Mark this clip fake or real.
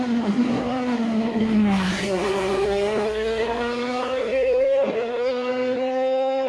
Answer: fake